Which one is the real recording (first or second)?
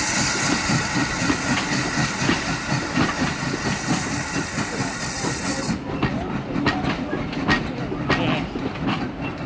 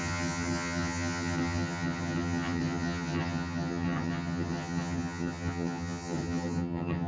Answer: first